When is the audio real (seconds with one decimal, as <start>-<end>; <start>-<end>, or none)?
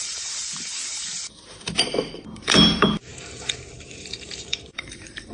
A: none